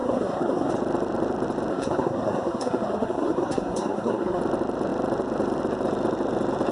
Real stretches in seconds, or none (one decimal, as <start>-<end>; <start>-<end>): 0.7-1.7; 4.4-6.7

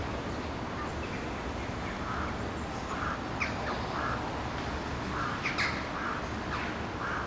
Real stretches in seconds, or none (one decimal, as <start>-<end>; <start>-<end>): 1.1-7.3

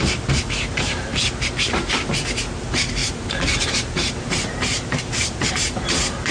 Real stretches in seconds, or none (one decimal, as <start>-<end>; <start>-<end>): 1.1-2.6